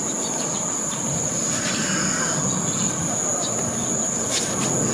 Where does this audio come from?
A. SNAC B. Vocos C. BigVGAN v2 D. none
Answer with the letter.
D